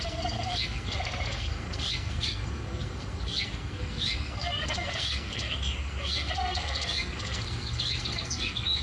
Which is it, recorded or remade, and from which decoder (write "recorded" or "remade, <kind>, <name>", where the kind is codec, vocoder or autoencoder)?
remade, codec, SNAC